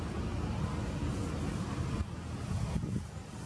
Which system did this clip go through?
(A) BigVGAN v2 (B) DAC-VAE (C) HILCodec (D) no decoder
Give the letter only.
D